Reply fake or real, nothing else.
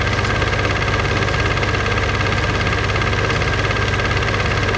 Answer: real